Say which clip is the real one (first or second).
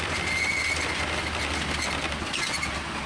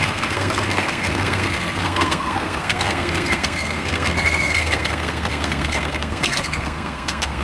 first